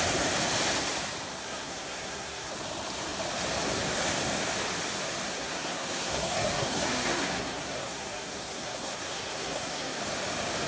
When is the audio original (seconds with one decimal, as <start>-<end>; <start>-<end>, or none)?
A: 0.0-1.3; 2.5-5.3; 10.0-10.7